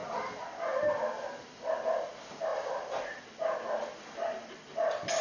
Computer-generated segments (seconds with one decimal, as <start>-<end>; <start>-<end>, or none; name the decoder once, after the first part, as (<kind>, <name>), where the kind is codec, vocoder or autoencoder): 2.5-3.2 (vocoder, BigVGAN v2); 3.8-4.6